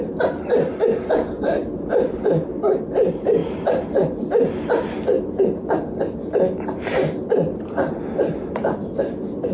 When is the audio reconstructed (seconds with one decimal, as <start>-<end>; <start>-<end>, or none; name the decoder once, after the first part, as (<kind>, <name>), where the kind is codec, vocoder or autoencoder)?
none